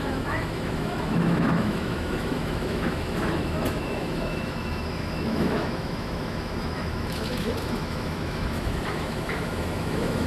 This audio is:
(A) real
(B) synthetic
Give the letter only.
B